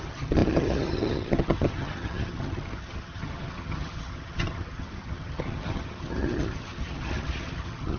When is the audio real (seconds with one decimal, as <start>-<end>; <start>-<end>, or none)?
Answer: none